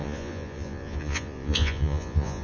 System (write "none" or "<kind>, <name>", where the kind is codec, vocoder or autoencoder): vocoder, Vocos